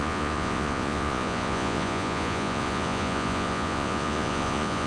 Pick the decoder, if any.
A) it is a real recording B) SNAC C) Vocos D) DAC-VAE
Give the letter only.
C